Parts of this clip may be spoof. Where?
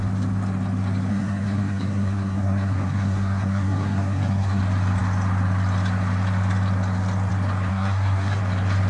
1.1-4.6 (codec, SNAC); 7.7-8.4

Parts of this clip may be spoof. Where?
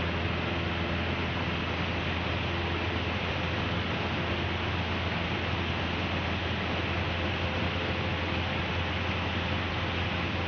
none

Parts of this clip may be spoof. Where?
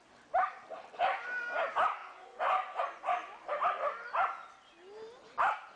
2.0-3.5 (vocoder, Vocos)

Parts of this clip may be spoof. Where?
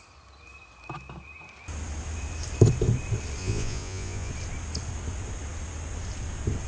3.4-4.3 (vocoder, Vocos)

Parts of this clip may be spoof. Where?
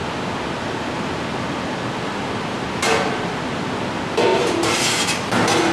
4.3-5.3 (vocoder, BigVGAN v2)